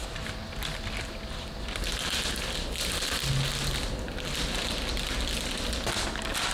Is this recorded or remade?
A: recorded